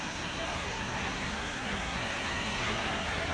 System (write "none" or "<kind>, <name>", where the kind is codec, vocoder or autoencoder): codec, SNAC